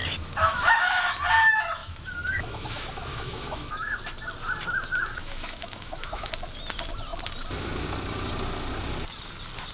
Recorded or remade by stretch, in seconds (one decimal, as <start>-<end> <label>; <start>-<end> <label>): 0.0-1.1 remade; 1.1-1.8 recorded; 1.8-4.0 remade; 4.0-5.2 recorded; 5.2-6.3 remade; 6.3-9.7 recorded